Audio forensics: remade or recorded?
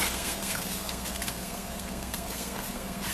remade